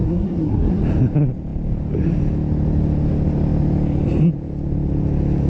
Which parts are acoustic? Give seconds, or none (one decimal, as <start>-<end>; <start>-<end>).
0.8-5.5